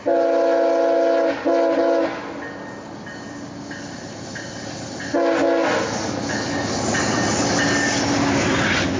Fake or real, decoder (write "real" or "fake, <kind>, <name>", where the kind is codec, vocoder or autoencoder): real